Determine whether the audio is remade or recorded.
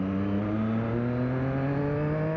recorded